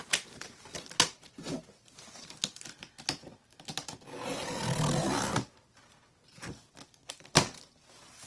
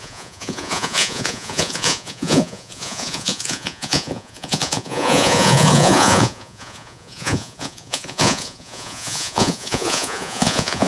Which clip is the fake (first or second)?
second